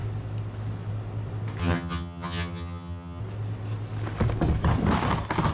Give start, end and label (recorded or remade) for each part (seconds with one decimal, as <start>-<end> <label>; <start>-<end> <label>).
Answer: 0.0-1.6 recorded; 1.6-3.2 remade; 3.2-5.5 recorded